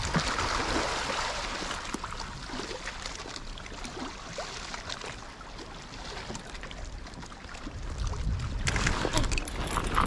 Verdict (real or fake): real